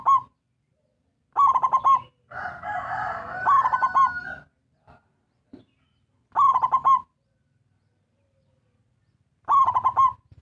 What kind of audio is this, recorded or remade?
recorded